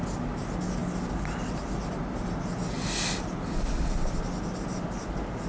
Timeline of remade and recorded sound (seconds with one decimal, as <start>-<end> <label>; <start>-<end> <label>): 0.0-5.5 recorded

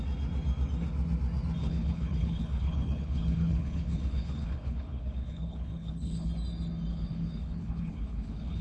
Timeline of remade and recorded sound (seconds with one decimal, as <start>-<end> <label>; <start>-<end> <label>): 0.0-1.6 recorded; 1.6-6.3 remade; 6.3-6.9 recorded; 6.9-8.6 remade

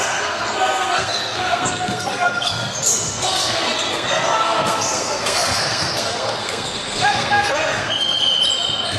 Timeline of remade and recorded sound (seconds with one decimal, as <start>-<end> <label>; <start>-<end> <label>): 0.0-8.2 remade; 8.2-9.0 recorded

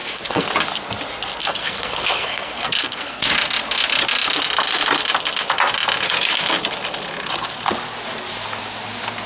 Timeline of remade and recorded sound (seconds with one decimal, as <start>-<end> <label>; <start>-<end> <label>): 0.0-0.5 remade; 0.5-1.4 recorded; 1.4-3.2 remade; 3.2-9.3 recorded

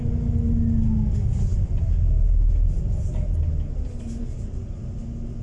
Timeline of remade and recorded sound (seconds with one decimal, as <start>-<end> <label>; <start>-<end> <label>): 0.0-5.4 recorded

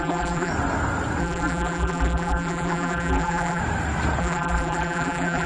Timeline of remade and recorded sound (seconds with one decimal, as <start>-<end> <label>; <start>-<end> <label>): 0.0-0.5 remade; 0.5-1.2 recorded; 1.2-3.6 remade; 3.6-4.2 recorded; 4.2-5.5 remade